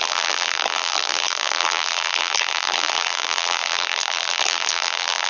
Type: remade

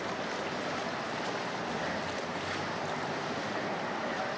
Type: recorded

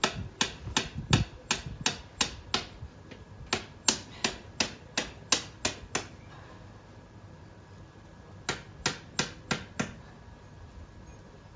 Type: recorded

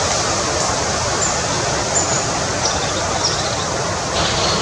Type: recorded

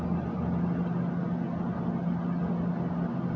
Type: recorded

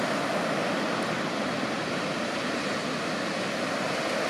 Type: recorded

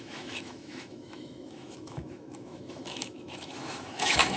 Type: remade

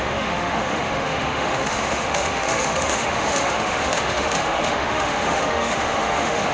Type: remade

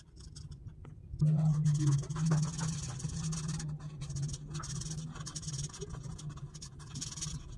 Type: recorded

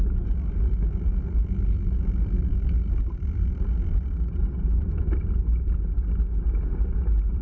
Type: recorded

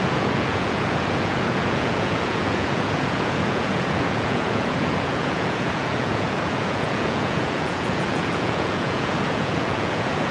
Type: remade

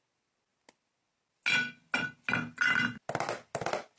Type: recorded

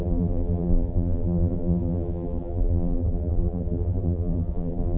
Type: remade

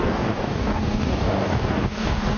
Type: remade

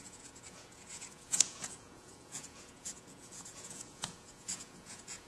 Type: remade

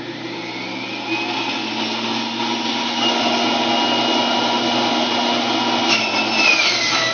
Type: recorded